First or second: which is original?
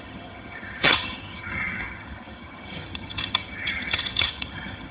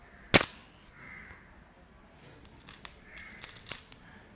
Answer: second